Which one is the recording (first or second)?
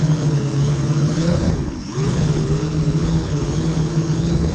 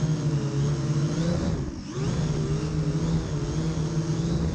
second